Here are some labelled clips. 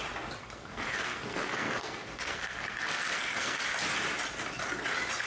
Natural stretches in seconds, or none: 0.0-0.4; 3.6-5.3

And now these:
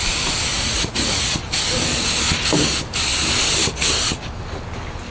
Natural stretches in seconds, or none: 0.0-0.5; 1.4-5.1

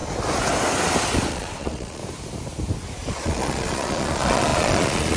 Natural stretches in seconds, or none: 0.0-1.3; 2.0-3.1

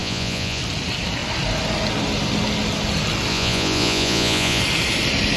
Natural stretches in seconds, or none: 0.6-3.3; 4.6-5.4

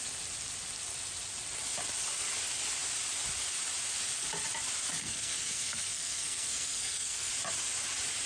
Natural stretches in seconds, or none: 0.0-5.0; 7.3-8.3

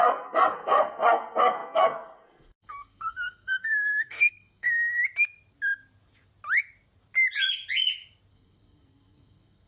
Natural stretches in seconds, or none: 5.0-8.3

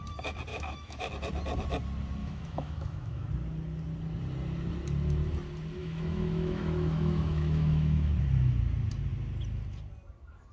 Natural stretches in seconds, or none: 0.0-0.5; 1.1-2.2; 3.3-5.8; 8.1-10.5